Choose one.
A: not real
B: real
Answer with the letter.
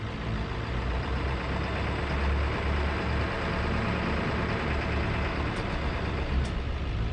B